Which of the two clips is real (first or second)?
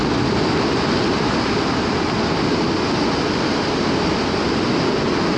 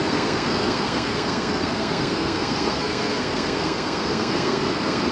first